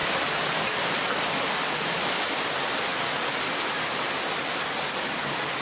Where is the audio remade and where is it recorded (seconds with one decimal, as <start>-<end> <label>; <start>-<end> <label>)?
0.0-5.6 recorded